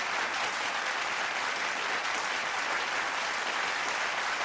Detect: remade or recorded recorded